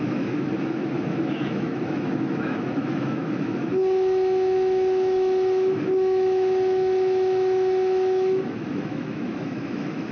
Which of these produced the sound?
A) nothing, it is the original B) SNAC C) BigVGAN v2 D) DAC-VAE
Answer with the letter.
D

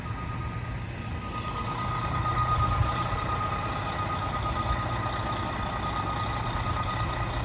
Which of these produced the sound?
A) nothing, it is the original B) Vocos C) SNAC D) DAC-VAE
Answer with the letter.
A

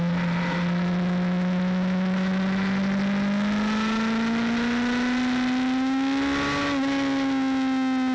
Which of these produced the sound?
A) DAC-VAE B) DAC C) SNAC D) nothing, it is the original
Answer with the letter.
D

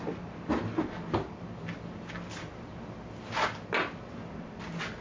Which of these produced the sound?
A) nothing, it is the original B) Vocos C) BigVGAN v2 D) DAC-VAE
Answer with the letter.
A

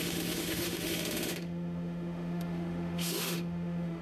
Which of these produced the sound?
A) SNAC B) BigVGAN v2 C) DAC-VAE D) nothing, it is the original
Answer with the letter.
C